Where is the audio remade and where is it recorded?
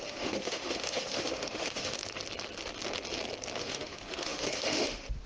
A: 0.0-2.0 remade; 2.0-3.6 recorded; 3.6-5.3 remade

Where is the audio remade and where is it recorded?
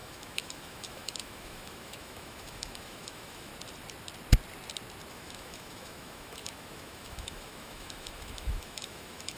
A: 0.0-3.5 remade; 3.5-5.1 recorded; 5.1-9.4 remade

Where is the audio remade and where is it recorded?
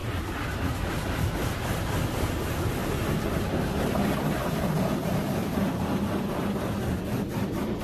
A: 0.0-7.8 recorded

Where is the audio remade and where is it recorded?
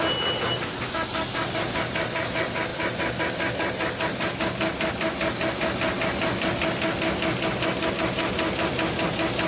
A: 0.0-9.5 recorded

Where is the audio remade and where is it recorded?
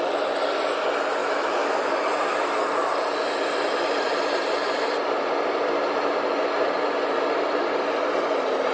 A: 0.0-1.2 recorded; 1.2-1.9 remade; 1.9-8.7 recorded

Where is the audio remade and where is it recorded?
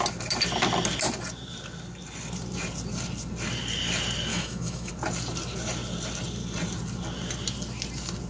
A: 0.0-4.3 recorded; 4.3-4.9 remade; 4.9-8.3 recorded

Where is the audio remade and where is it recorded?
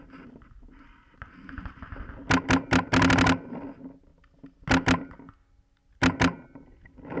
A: 0.0-7.2 recorded